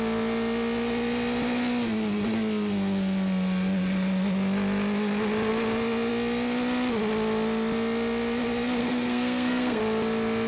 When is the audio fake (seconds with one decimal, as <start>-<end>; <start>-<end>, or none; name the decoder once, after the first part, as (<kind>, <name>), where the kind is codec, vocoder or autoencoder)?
8.8-9.8 (codec, SNAC)